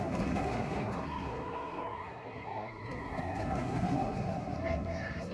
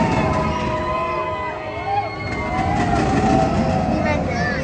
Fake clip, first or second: first